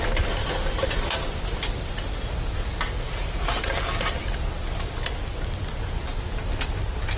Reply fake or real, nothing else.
real